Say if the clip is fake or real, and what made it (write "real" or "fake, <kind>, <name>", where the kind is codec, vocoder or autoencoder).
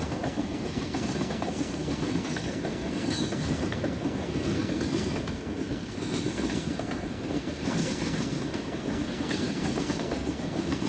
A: fake, codec, SNAC